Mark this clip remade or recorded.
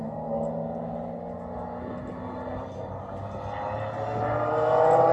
recorded